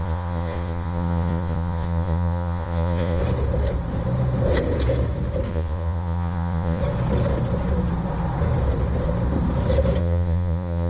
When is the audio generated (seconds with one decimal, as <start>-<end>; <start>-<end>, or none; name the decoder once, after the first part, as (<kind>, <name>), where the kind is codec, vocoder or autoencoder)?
0.0-3.2 (vocoder, Vocos); 5.5-6.8; 10.0-10.9